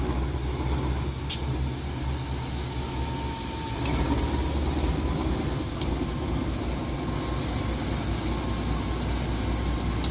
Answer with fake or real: real